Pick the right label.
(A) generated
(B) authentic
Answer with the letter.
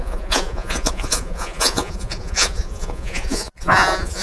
A